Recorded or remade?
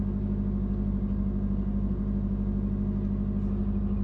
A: recorded